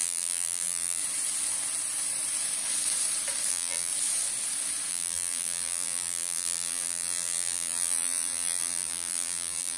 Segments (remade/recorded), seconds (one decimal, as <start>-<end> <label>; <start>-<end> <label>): 0.0-1.0 remade; 1.0-3.5 recorded; 3.5-3.9 remade; 3.9-4.9 recorded; 4.9-9.8 remade